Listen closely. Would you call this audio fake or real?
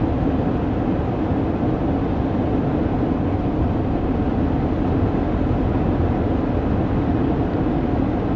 real